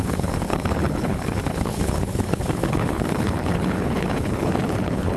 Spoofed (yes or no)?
yes